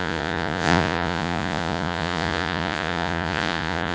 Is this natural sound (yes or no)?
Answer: no